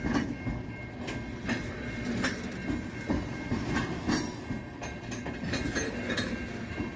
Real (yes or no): yes